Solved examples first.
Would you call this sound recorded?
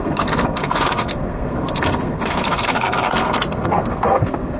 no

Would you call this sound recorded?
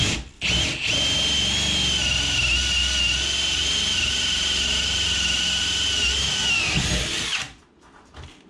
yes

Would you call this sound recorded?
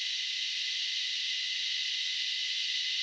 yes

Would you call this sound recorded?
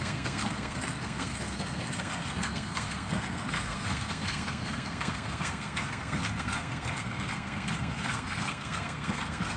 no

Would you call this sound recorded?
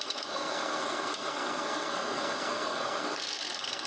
no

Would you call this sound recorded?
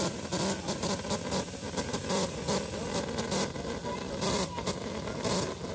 yes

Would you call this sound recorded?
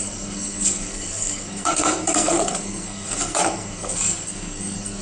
no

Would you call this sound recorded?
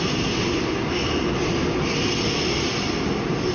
yes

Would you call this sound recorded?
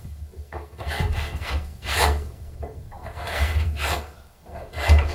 no